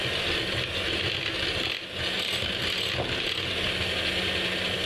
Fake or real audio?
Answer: real